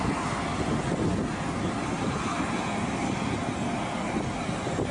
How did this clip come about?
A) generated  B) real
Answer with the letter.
B